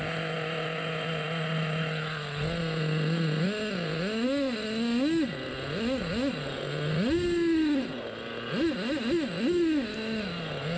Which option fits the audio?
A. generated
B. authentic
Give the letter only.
B